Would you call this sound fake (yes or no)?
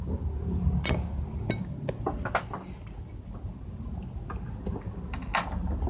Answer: no